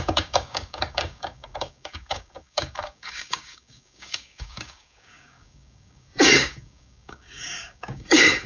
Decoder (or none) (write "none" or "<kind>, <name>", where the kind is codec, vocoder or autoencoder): codec, DAC